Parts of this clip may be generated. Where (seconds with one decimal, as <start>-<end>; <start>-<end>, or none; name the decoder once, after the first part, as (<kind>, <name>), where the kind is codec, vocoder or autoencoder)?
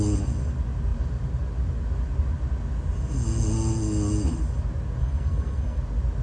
5.0-5.8 (codec, SNAC)